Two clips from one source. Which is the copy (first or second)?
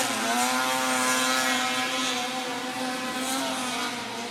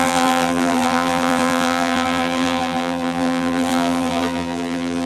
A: second